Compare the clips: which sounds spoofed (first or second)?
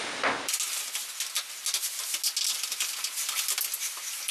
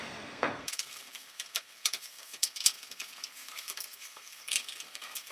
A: second